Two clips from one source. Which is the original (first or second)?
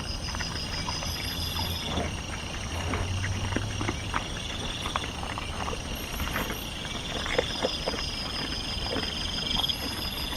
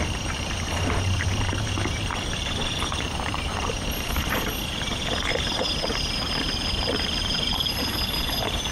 first